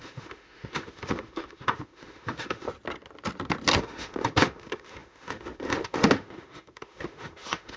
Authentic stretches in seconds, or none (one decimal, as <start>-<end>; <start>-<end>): 2.7-3.8